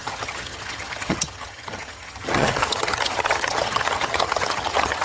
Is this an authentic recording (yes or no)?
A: no